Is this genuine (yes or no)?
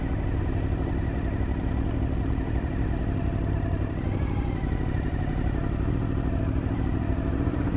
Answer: no